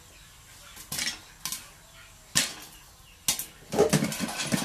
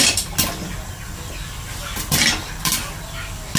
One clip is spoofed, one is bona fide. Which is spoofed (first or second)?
second